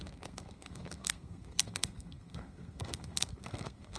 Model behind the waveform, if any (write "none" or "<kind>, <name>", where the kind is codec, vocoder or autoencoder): codec, SNAC